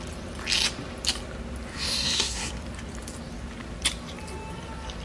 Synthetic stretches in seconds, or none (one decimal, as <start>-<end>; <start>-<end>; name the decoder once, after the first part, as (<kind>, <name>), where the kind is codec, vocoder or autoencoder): 1.7-2.5 (codec, SNAC)